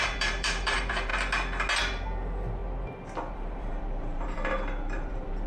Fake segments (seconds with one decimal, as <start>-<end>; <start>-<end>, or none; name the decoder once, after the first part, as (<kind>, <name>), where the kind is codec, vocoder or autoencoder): 0.0-1.1 (vocoder, BigVGAN v2); 1.8-2.6; 3.3-5.5